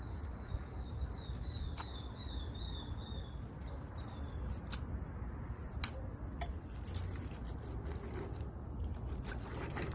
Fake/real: real